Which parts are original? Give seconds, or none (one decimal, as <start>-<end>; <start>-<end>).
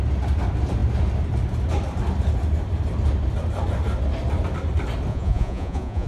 0.0-5.1